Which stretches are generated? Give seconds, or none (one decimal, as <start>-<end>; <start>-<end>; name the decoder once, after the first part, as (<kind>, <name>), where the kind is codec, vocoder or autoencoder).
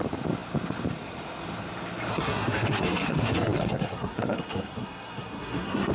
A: 2.1-5.9 (codec, SNAC)